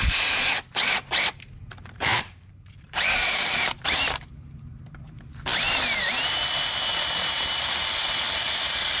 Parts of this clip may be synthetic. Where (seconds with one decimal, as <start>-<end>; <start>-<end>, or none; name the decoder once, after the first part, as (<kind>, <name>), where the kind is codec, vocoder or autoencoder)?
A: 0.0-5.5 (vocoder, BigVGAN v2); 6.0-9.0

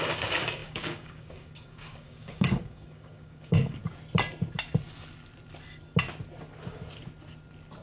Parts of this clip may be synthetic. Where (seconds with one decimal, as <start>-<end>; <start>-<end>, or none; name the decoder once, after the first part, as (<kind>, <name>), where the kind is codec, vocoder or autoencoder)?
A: 0.0-3.8 (codec, DAC)

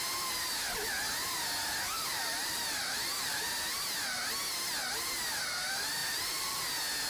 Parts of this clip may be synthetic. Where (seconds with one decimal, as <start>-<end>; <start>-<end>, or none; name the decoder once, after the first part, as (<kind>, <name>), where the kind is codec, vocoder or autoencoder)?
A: 2.1-3.4 (vocoder, BigVGAN v2); 6.0-6.6

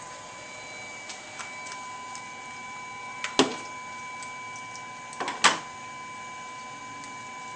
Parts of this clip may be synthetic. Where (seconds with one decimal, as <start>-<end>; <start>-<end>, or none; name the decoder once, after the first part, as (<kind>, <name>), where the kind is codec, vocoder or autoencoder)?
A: none